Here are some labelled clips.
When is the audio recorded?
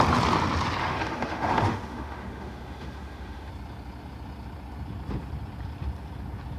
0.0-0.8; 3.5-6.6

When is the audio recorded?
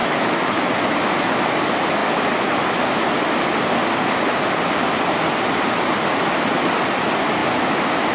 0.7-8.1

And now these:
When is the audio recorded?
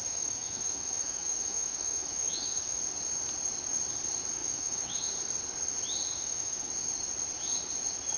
2.8-4.4; 5.1-6.1; 6.7-8.2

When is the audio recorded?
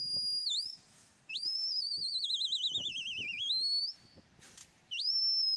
0.0-0.4; 3.8-5.6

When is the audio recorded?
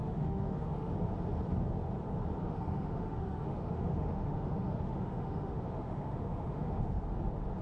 0.9-2.4; 7.0-7.6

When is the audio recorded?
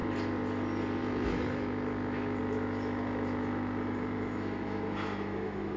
0.0-1.0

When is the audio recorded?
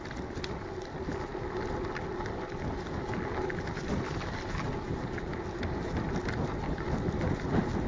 0.0-7.9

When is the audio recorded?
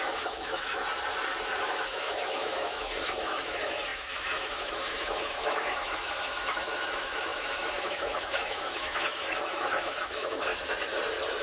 0.8-1.6; 10.5-11.4